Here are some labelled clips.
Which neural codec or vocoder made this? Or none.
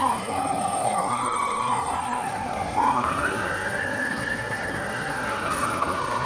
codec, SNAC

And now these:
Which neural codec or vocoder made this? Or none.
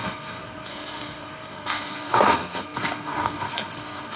codec, SNAC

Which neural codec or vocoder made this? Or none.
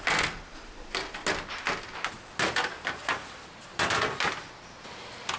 none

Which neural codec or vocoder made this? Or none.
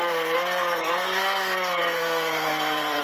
codec, SNAC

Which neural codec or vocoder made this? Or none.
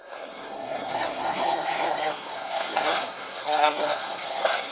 codec, SNAC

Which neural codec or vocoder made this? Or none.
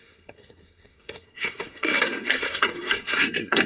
codec, SNAC